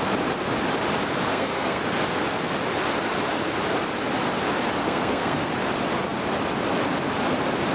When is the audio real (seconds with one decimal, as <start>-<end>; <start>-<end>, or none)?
0.0-1.3; 1.8-4.8; 5.5-7.7